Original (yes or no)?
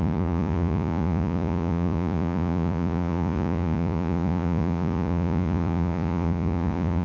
no